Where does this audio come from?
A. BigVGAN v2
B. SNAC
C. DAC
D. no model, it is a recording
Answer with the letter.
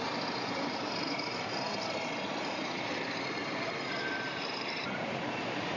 A